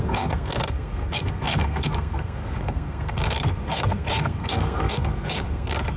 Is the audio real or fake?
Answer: fake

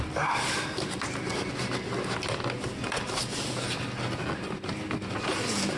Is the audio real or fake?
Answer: real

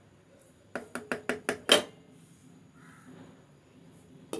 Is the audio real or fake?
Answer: real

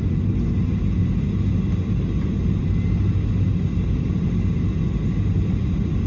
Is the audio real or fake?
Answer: real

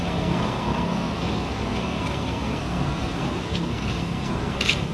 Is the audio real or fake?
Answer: fake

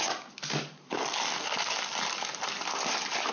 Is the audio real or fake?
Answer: real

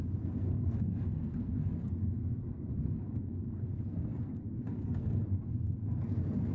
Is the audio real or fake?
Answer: fake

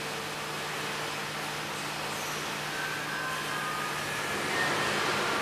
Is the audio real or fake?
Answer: real